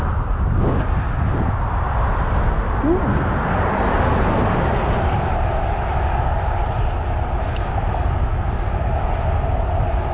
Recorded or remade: recorded